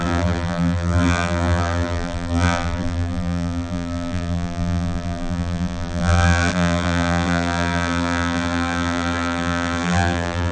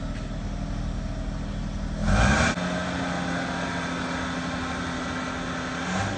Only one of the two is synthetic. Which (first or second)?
first